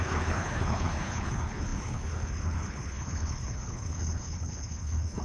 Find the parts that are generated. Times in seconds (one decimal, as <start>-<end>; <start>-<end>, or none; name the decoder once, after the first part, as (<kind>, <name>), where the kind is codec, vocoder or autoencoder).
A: 0.0-5.2 (codec, HILCodec)